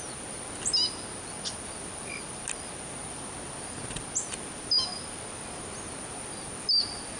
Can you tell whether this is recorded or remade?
recorded